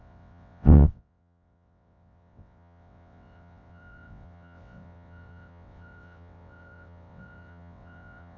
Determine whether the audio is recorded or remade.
remade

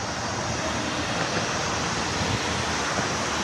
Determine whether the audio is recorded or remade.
recorded